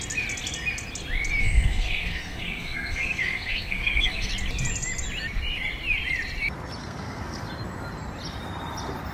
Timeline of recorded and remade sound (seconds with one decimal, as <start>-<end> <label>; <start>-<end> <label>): 0.0-1.4 recorded; 1.4-4.3 remade; 4.3-6.8 recorded; 6.8-7.4 remade; 7.4-9.1 recorded